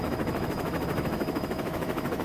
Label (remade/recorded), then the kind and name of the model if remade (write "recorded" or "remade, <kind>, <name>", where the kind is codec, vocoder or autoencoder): remade, autoencoder, DAC-VAE